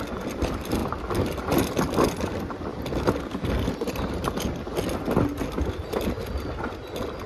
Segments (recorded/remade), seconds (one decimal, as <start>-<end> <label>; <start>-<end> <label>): 0.0-0.8 remade; 0.8-2.3 recorded; 2.3-2.7 remade; 2.7-7.3 recorded